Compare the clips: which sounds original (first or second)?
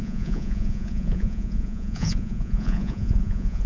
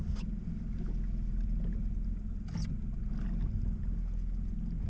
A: second